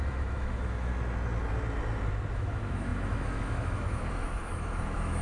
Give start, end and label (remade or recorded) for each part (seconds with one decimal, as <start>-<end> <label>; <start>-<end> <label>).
0.0-0.9 remade; 0.9-2.3 recorded; 2.3-5.2 remade